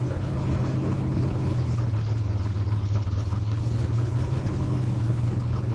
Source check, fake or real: fake